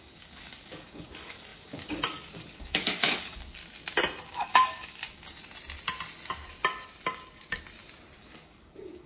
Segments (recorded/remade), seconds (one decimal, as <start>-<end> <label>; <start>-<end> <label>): 0.0-3.6 remade; 3.6-4.2 recorded; 4.2-5.4 remade; 5.4-8.2 recorded; 8.2-9.1 remade